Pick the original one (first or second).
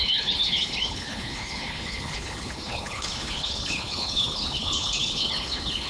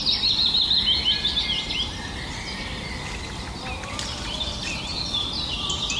second